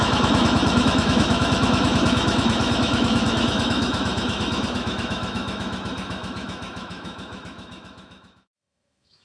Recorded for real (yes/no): no